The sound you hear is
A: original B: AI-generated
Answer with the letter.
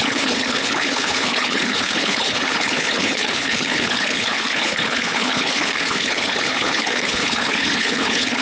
B